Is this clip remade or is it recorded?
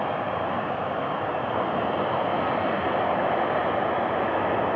recorded